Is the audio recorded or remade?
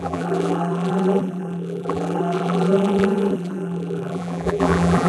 remade